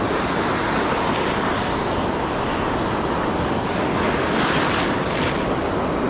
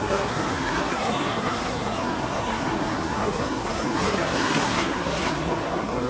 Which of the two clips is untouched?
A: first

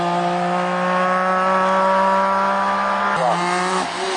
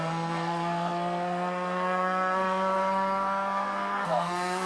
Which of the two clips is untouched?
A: first